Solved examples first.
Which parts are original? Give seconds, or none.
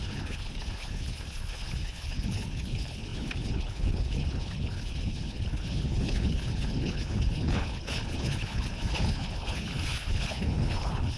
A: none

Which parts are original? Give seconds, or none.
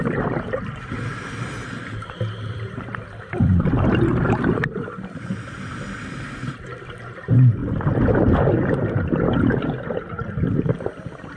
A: 0.0-11.4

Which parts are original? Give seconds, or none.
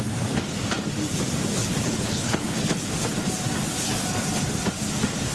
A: 0.0-1.6; 2.9-5.3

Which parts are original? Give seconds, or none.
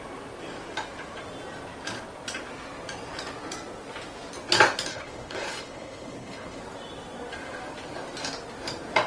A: 0.0-4.9; 6.6-9.1